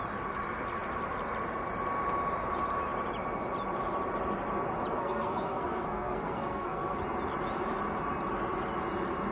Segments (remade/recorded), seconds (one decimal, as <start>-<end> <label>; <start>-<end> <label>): 0.0-5.0 recorded; 5.0-7.0 remade; 7.0-9.3 recorded